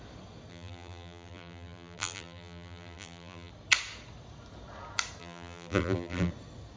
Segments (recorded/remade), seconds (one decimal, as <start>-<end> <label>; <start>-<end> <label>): 0.0-0.5 recorded; 0.5-3.5 remade; 3.5-5.2 recorded; 5.2-6.3 remade; 6.3-6.8 recorded